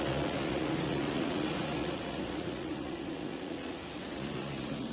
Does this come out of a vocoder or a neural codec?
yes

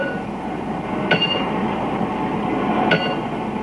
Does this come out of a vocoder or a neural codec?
no